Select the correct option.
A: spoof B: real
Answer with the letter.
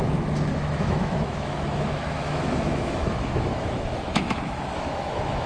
A